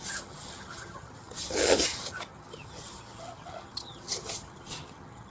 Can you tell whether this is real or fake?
fake